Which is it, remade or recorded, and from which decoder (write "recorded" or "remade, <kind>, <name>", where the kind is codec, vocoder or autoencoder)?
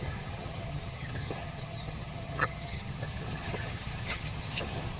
remade, vocoder, HiFi-GAN